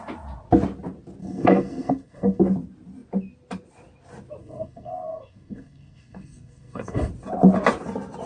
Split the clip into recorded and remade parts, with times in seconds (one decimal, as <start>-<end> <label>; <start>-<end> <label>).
0.0-1.2 recorded; 1.2-2.4 remade; 2.4-4.4 recorded; 4.4-7.1 remade; 7.1-8.3 recorded